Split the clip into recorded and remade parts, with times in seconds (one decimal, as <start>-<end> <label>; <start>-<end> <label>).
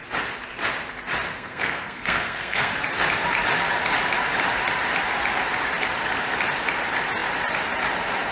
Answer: 0.0-1.3 recorded; 1.3-2.7 remade; 2.7-8.3 recorded